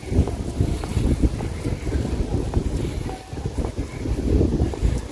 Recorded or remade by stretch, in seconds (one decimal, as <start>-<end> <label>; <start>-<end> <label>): 0.0-5.1 recorded